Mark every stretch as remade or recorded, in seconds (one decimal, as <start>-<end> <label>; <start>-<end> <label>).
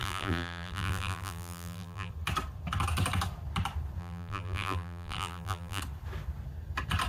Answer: 0.0-2.1 remade; 2.1-4.0 recorded; 4.0-5.8 remade; 5.8-7.1 recorded